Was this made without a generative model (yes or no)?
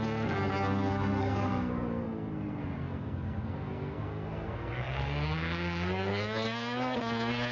no